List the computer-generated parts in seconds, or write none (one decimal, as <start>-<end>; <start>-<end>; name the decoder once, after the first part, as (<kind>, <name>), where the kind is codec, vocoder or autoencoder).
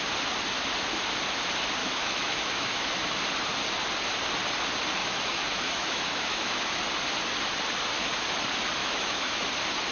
1.8-3.1 (autoencoder, DAC-VAE); 5.0-6.8; 8.8-9.5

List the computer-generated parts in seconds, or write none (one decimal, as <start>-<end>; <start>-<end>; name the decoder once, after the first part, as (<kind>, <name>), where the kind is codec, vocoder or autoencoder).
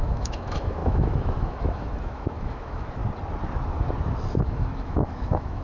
0.0-3.0 (autoencoder, DAC-VAE); 4.4-5.6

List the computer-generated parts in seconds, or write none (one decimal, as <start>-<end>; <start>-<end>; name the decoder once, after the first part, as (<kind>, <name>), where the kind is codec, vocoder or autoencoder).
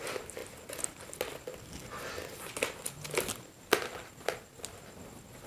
none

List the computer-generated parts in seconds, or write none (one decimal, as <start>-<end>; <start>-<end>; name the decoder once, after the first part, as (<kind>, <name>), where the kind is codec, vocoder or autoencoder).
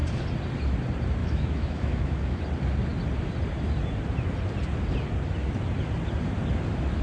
1.2-2.4 (autoencoder, DAC-VAE)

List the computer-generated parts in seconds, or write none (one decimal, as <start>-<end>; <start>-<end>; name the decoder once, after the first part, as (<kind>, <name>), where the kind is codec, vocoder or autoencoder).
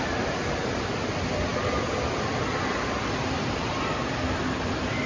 none